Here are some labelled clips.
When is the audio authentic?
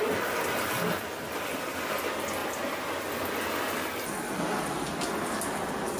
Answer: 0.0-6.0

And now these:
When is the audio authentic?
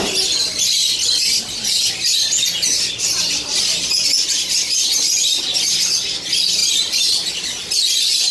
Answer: 0.0-0.8; 1.4-6.6; 7.3-8.3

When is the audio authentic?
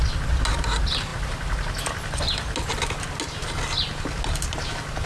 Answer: 0.0-5.1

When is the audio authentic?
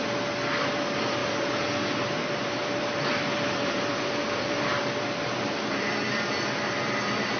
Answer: 0.0-1.2; 5.6-7.4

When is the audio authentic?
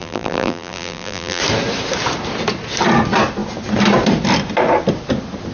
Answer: 1.4-5.5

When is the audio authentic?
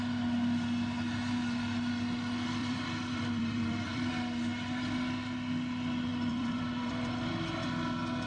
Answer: 0.0-2.6; 4.1-6.1; 7.3-8.3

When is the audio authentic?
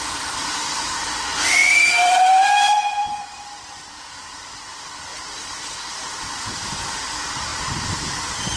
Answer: 0.0-1.6; 4.6-5.1; 6.6-7.5